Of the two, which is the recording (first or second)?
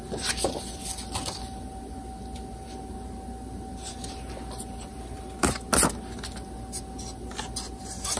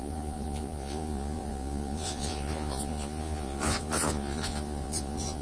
first